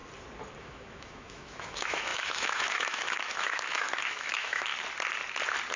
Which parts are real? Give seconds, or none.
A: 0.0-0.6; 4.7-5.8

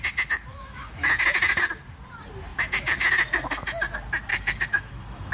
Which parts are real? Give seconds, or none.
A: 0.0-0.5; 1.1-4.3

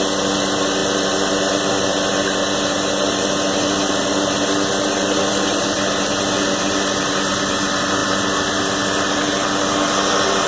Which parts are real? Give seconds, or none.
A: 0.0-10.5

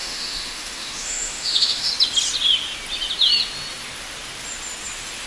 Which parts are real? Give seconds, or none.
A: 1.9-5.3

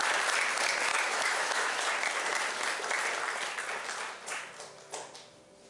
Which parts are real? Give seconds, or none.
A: 0.0-0.9; 1.8-5.7

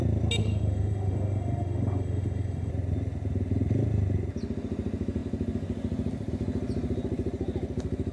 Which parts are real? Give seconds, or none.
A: 0.0-0.4; 2.7-8.1

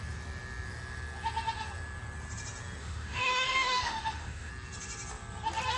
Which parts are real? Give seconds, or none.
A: 0.0-2.8; 4.5-5.8

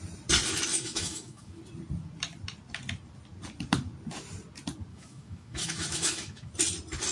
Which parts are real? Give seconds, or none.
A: 0.0-0.7; 1.6-4.9; 6.5-7.1